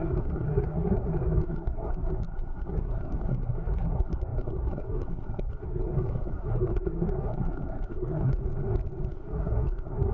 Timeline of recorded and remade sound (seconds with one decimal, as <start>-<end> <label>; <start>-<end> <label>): 0.0-8.4 remade; 8.4-9.1 recorded; 9.1-10.1 remade